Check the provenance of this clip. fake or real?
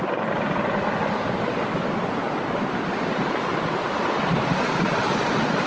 real